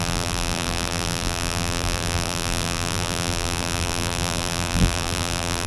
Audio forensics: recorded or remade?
remade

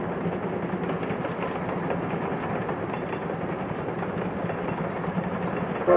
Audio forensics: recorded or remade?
recorded